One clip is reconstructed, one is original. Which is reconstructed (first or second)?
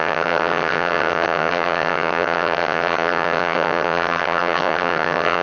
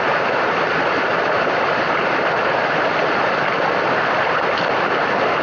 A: first